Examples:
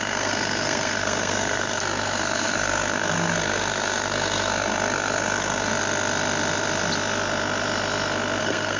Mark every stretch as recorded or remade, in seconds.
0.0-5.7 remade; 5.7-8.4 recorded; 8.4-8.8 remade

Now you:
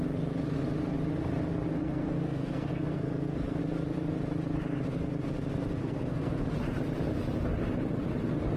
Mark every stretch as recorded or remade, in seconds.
0.0-1.7 recorded; 1.7-3.6 remade; 3.6-5.8 recorded; 5.8-6.4 remade; 6.4-8.6 recorded

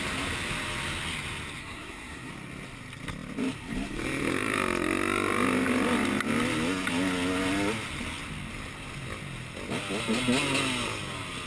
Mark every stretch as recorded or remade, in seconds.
0.0-1.6 recorded; 1.6-2.3 remade; 2.3-11.5 recorded

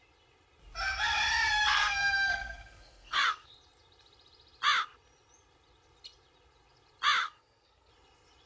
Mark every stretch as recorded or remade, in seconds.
0.0-1.7 recorded; 1.7-3.5 remade; 3.5-7.2 recorded; 7.2-7.9 remade; 7.9-8.5 recorded

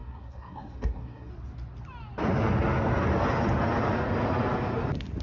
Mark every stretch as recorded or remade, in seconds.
0.0-1.3 remade; 1.3-5.2 recorded